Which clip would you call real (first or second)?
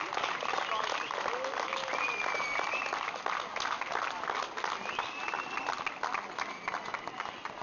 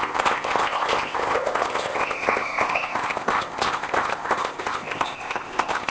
first